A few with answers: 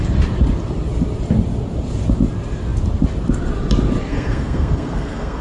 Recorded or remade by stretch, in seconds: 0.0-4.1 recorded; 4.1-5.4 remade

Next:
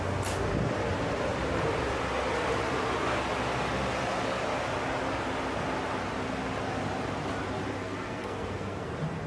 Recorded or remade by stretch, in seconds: 0.0-7.8 recorded; 7.8-8.9 remade; 8.9-9.3 recorded

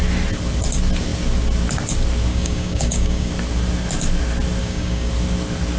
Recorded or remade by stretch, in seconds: 0.0-2.3 recorded; 2.3-3.3 remade; 3.3-4.6 recorded; 4.6-5.1 remade; 5.1-5.8 recorded

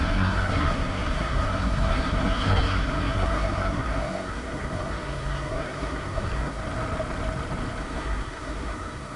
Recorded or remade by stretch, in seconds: 0.0-6.6 remade; 6.6-7.8 recorded; 7.8-9.2 remade

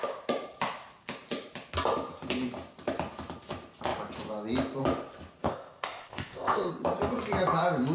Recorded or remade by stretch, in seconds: 0.0-5.4 recorded; 5.4-6.7 remade; 6.7-7.9 recorded

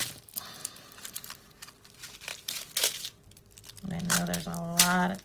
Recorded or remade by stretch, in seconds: 0.0-0.6 remade; 0.6-1.1 recorded; 1.1-2.3 remade; 2.3-5.2 recorded